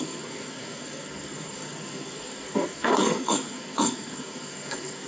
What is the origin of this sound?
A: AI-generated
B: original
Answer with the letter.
A